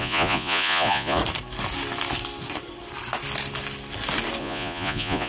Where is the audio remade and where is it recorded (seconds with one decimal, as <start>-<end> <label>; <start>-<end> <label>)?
0.0-1.2 remade; 1.2-4.4 recorded; 4.4-5.3 remade